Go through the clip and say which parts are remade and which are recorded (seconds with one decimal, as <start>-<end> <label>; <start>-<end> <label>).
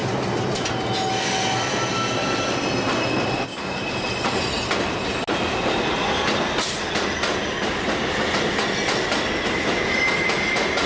0.0-10.9 recorded